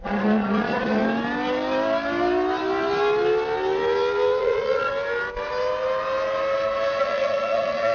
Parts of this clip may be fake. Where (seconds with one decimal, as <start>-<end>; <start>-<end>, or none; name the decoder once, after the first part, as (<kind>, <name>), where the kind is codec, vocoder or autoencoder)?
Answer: 0.0-1.0 (vocoder, Vocos); 4.4-4.9; 7.0-7.9

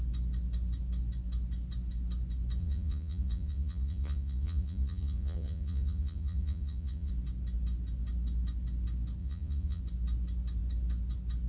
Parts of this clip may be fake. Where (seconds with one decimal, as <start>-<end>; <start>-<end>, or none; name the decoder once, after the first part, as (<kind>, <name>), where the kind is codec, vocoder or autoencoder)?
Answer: 2.6-7.1 (vocoder, Vocos); 9.2-9.8

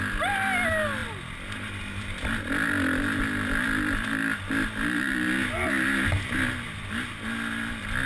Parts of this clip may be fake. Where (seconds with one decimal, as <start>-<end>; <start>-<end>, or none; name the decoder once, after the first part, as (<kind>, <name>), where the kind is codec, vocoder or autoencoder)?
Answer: none

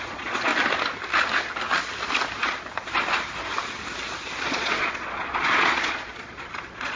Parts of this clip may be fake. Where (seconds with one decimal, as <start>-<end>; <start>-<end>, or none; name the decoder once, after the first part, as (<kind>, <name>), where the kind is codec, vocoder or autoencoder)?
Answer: 0.0-0.5 (vocoder, Vocos); 4.5-7.0

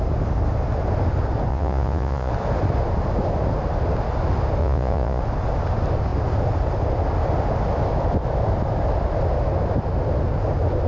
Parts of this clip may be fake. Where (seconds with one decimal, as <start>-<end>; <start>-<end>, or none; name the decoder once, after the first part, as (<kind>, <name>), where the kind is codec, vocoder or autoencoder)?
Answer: 1.5-2.3 (vocoder, Vocos); 4.6-5.2

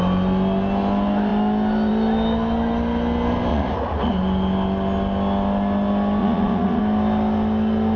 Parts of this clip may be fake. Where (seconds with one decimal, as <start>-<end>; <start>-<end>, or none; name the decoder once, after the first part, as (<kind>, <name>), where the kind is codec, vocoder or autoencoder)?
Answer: 3.5-4.1 (vocoder, Vocos); 6.2-6.8

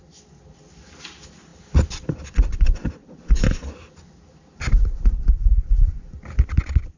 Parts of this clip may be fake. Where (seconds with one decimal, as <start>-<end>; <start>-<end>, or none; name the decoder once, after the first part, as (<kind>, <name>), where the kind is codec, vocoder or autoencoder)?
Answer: none

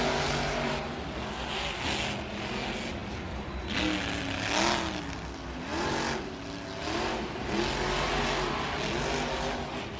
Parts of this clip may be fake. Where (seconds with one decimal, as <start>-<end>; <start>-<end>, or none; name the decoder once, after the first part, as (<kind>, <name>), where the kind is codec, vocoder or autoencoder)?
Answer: none